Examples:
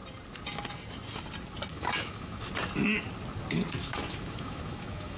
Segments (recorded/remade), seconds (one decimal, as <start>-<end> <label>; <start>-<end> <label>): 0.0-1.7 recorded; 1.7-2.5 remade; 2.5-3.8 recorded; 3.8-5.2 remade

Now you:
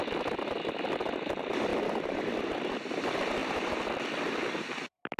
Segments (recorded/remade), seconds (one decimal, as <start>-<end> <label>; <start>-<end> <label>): 0.0-5.2 recorded

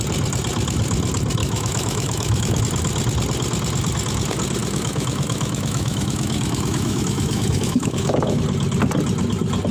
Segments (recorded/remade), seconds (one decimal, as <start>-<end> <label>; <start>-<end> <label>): 0.0-1.4 recorded; 1.4-2.6 remade; 2.6-4.6 recorded; 4.6-8.4 remade; 8.4-9.7 recorded

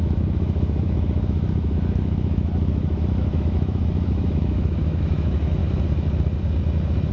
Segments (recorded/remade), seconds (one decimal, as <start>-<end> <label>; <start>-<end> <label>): 0.0-5.6 remade; 5.6-7.1 recorded